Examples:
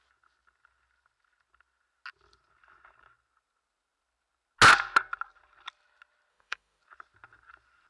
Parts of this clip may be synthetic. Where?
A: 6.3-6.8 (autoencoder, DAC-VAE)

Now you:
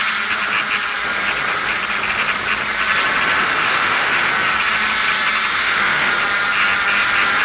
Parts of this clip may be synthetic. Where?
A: 3.4-4.3 (autoencoder, DAC-VAE); 5.5-6.1

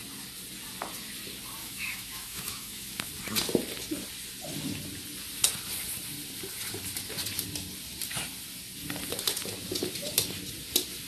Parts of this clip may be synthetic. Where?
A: 1.6-3.1 (autoencoder, DAC-VAE)

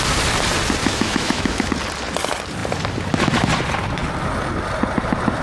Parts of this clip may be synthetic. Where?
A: 0.8-1.7 (autoencoder, DAC-VAE)

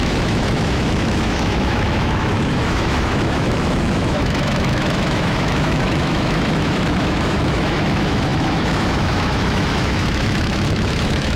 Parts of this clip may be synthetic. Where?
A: 0.0-11.4 (autoencoder, DAC-VAE)

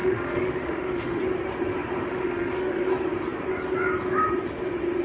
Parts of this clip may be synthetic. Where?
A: 0.0-1.2 (autoencoder, DAC-VAE); 2.1-2.9